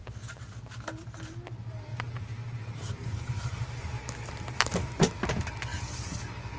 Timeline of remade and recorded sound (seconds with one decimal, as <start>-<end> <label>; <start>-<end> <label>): 0.0-0.6 remade; 0.6-1.9 recorded; 1.9-4.9 remade; 4.9-6.6 recorded